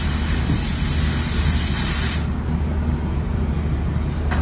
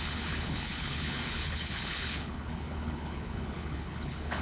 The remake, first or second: second